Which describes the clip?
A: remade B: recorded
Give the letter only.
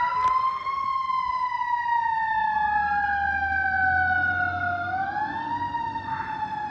B